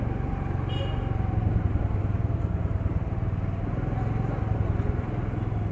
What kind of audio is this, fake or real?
real